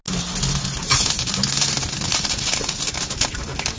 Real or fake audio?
real